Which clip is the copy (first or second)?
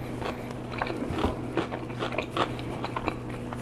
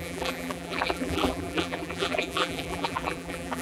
second